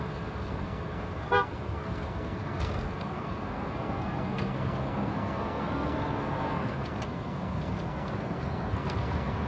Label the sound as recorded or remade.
remade